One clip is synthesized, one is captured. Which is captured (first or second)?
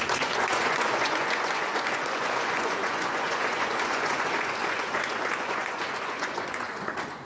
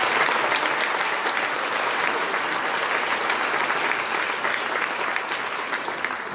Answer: second